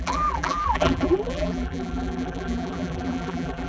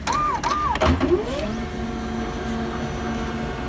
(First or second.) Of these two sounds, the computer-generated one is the first